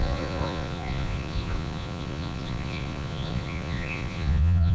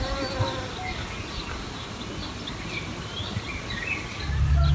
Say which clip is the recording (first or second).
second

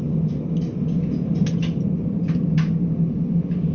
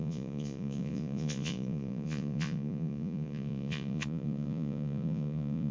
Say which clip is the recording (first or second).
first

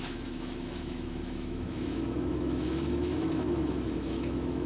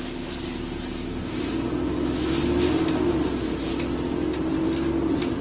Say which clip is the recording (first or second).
second